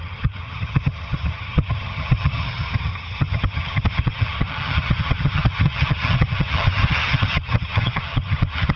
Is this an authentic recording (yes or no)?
no